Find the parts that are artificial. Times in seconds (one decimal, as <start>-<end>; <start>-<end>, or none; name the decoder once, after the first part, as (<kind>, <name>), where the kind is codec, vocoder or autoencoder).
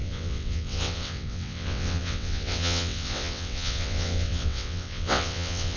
0.0-5.8 (vocoder, WaveNeXt)